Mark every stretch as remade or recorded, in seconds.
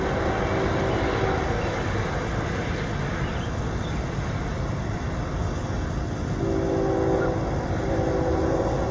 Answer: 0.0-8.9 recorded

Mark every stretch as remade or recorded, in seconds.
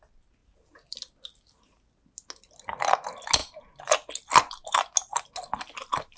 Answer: 0.0-6.2 recorded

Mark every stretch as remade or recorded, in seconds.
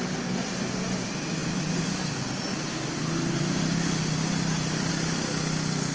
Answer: 0.0-5.9 recorded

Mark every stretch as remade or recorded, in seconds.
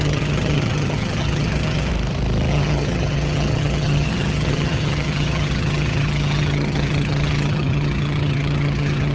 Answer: 0.0-1.9 remade; 1.9-2.5 recorded; 2.5-9.1 remade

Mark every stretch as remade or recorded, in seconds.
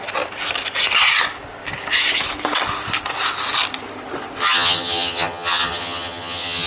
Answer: 0.0-4.4 recorded; 4.4-6.7 remade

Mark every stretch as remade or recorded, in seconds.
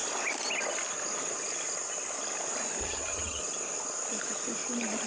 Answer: 0.0-2.8 recorded; 2.8-3.4 remade; 3.4-5.1 recorded